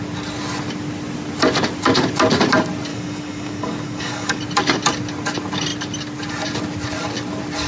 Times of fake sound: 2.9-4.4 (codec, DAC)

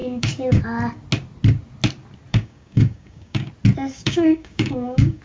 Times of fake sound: 0.0-0.6 (codec, DAC); 2.3-3.5; 3.9-5.2

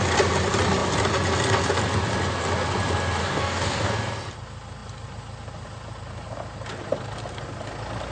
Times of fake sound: 3.2-3.9 (codec, DAC)

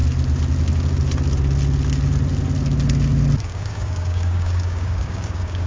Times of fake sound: 3.4-5.7 (codec, DAC)